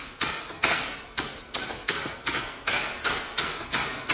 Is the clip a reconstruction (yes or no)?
yes